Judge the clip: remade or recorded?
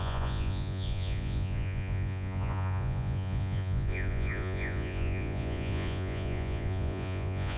remade